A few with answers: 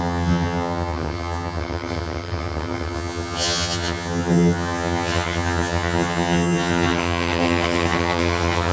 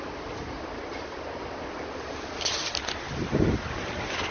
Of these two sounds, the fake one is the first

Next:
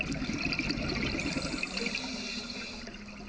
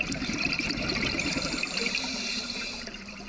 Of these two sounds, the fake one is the second